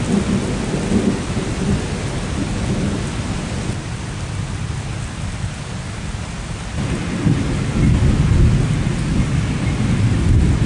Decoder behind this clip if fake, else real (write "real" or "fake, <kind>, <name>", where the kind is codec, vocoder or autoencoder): real